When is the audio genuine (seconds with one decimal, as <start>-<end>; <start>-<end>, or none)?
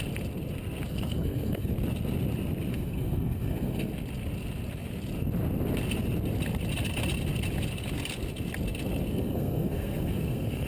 0.0-0.9; 1.7-2.7; 3.9-9.1